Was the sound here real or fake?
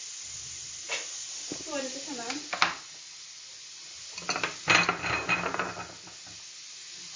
real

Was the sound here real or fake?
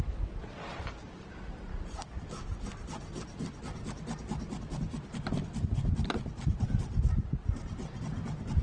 real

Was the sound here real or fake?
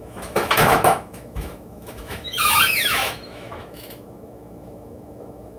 fake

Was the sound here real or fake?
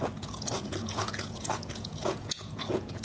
fake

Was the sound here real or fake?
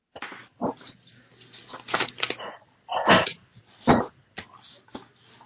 real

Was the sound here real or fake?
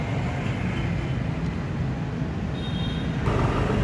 real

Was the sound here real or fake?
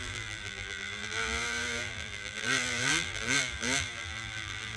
fake